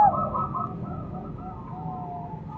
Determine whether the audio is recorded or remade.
recorded